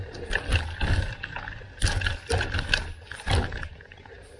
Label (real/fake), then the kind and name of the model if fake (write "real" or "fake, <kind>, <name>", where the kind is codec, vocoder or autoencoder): real